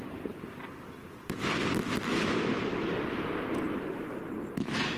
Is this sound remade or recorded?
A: recorded